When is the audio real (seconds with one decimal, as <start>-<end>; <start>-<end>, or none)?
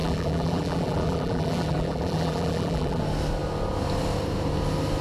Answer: 3.0-5.0